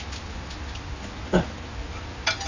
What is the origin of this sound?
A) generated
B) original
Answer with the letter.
B